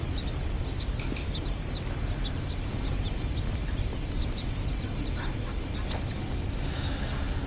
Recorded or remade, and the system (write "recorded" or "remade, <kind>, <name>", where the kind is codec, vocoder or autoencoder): recorded